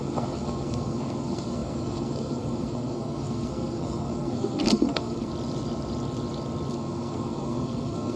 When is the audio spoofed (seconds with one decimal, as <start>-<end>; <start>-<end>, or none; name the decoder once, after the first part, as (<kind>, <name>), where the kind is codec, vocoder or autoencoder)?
0.0-5.3 (codec, SNAC); 6.7-8.2